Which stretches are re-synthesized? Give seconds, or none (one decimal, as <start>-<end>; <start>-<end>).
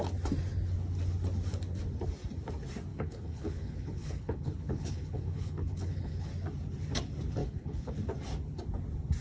2.9-6.3; 7.4-7.9